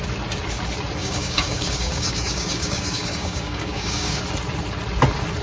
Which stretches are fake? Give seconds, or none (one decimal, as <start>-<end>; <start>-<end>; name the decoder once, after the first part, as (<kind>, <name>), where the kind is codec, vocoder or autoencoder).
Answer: 1.0-4.2 (codec, DAC)